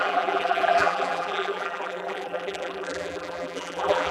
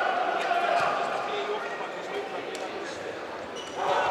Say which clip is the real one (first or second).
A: second